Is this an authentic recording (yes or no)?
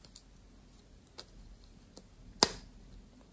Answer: yes